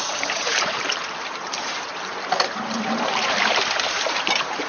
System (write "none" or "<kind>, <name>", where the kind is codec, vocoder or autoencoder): vocoder, BigVGAN v2